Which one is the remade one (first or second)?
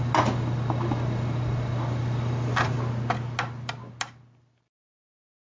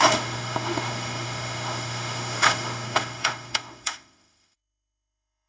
second